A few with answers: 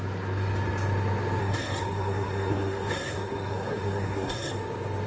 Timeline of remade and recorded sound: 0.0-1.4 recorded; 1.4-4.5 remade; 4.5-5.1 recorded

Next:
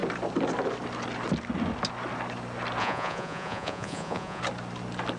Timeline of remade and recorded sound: 0.0-2.8 recorded; 2.8-4.4 remade; 4.4-5.2 recorded

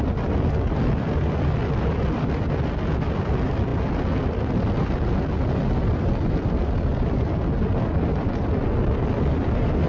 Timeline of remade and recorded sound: 0.0-9.9 recorded